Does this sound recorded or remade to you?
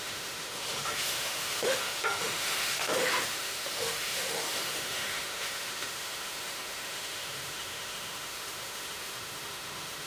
remade